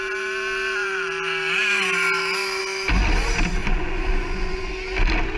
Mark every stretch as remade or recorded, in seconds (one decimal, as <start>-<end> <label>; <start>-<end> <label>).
0.0-3.6 recorded; 3.6-4.7 remade; 4.7-5.4 recorded